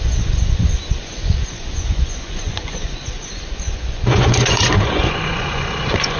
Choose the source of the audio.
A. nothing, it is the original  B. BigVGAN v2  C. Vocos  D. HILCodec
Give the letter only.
C